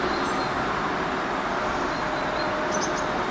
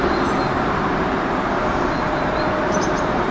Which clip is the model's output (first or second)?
second